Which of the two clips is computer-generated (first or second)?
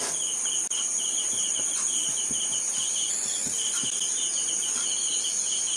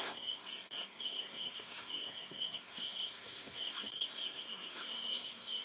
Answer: second